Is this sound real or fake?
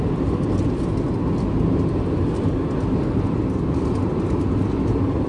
real